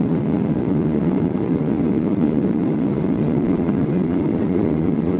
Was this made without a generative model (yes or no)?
no